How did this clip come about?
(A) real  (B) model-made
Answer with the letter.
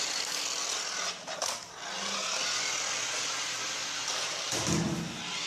A